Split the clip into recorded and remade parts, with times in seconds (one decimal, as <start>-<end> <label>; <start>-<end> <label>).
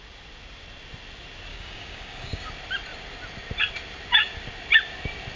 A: 0.0-1.5 recorded; 1.5-2.5 remade; 2.5-5.4 recorded